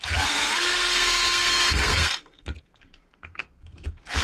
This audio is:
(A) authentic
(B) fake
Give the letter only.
B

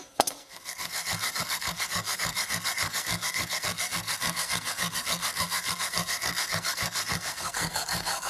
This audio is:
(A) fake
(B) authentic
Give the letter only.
A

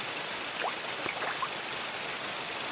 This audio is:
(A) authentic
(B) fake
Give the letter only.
A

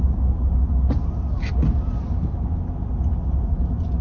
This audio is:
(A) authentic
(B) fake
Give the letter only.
A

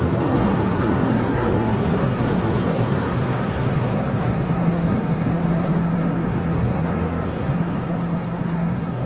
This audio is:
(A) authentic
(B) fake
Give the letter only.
B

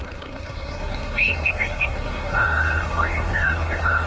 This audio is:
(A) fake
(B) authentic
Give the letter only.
A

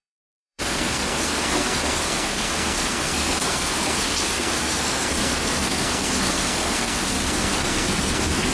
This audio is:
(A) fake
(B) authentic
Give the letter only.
A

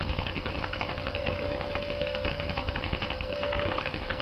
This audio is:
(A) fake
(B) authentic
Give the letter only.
A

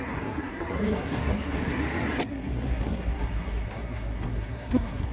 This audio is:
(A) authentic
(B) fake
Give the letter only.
B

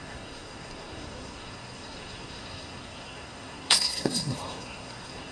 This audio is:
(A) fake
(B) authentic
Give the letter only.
A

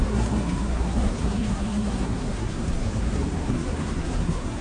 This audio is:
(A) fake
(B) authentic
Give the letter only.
A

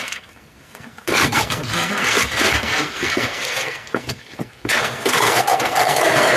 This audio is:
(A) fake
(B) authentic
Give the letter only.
A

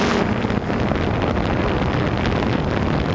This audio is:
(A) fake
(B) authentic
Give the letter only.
B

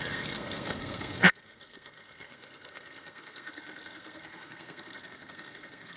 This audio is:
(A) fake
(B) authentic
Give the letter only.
A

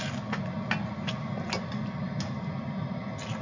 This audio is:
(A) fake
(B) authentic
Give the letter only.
B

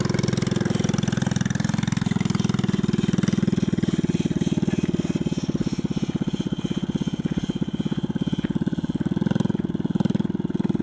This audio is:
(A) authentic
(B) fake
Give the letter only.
A